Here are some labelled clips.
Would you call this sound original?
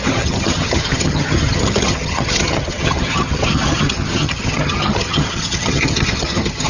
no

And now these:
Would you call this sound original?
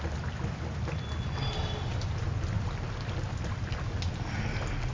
yes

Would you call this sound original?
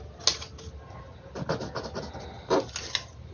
yes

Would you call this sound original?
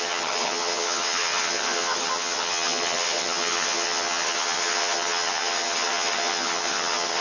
no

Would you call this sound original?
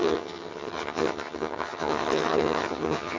no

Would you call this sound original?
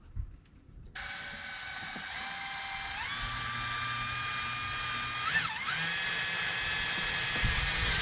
yes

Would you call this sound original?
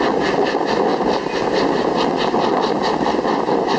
yes